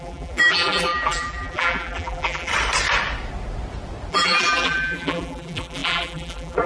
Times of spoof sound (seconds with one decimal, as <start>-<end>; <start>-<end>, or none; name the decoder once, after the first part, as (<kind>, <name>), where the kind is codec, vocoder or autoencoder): 0.0-2.5 (vocoder, BigVGAN v2); 4.1-6.7